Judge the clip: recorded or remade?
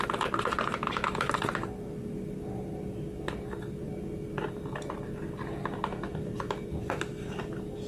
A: recorded